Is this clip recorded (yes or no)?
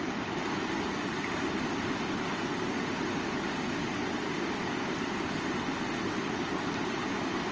yes